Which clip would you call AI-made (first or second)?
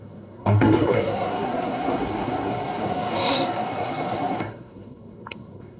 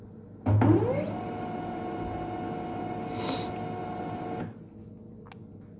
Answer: first